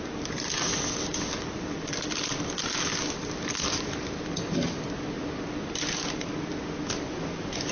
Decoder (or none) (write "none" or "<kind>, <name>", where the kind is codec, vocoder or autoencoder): none